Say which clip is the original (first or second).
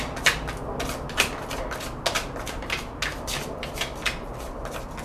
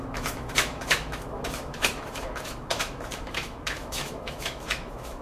first